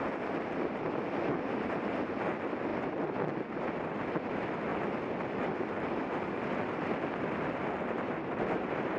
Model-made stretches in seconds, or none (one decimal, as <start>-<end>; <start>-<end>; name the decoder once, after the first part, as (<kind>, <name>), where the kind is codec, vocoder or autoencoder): none